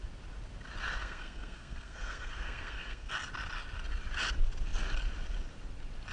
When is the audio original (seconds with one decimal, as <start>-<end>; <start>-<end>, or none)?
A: 0.0-1.0; 3.1-6.1